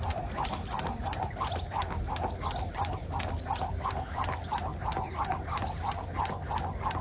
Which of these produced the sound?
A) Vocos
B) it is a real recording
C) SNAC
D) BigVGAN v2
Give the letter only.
B